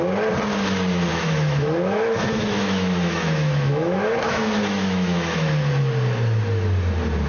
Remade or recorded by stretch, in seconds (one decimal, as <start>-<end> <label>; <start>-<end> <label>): 0.0-1.1 recorded; 1.1-5.5 remade; 5.5-7.3 recorded